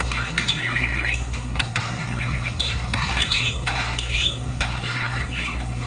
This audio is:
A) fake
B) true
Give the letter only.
A